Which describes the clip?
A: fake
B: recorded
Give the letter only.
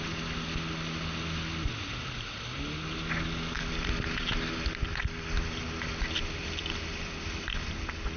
B